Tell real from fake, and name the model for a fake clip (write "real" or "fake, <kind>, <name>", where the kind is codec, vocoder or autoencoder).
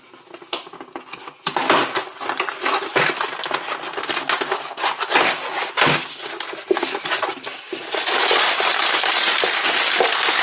real